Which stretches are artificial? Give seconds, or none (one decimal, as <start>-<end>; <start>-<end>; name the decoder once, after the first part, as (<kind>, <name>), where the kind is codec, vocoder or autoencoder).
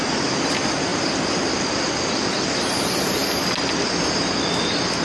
none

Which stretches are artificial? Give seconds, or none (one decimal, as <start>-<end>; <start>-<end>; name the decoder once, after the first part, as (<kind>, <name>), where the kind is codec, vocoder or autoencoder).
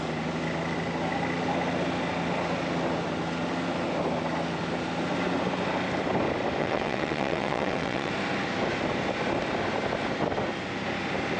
6.6-8.1 (vocoder, WaveNeXt)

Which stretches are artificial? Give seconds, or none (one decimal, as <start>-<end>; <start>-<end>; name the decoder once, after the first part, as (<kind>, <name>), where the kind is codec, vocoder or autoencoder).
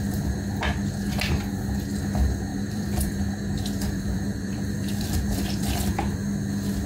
2.5-5.9 (vocoder, BigVGAN v2)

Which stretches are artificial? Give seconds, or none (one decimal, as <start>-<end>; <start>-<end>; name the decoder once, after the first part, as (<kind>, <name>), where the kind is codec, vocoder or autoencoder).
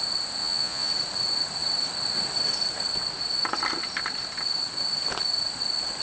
0.4-0.9 (vocoder, Vocos)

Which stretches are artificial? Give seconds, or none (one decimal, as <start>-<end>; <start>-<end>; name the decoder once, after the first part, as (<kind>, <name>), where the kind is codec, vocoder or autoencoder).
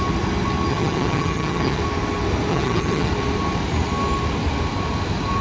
0.7-1.8 (vocoder, HiFi-GAN); 2.5-3.1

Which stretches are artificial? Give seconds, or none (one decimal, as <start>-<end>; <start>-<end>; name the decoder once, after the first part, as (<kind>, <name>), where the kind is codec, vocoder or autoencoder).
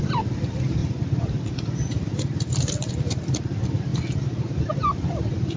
0.0-3.9 (vocoder, BigVGAN v2); 4.8-5.6